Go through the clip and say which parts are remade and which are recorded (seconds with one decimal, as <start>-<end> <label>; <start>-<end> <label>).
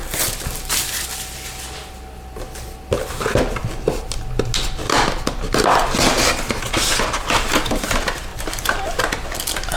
0.0-1.0 remade; 1.0-3.6 recorded; 3.6-4.2 remade; 4.2-8.3 recorded; 8.3-8.8 remade; 8.8-9.8 recorded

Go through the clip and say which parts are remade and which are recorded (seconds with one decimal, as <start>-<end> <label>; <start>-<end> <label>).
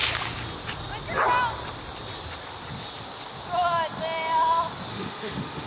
0.0-4.9 recorded; 4.9-5.7 remade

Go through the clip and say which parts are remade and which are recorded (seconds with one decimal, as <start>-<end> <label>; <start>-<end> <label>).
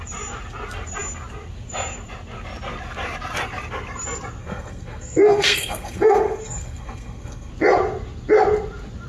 0.0-4.4 recorded; 4.4-7.5 remade; 7.5-9.1 recorded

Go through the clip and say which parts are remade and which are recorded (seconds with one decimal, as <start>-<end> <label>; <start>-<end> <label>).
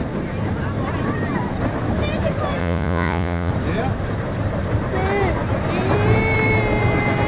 0.0-2.6 recorded; 2.6-3.5 remade; 3.5-7.3 recorded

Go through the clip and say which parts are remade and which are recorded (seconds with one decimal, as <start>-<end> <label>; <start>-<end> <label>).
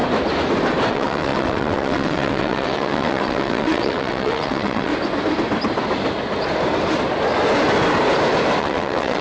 0.0-0.9 recorded; 0.9-4.9 remade; 4.9-8.6 recorded; 8.6-9.2 remade